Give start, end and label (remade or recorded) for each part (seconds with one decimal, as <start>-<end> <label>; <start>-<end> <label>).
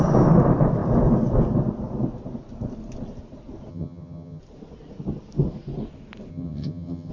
0.0-3.7 recorded; 3.7-4.4 remade; 4.4-6.3 recorded; 6.3-7.1 remade